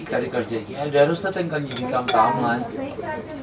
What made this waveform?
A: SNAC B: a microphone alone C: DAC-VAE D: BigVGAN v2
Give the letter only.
B